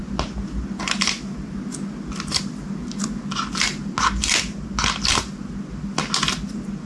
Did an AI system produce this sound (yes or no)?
no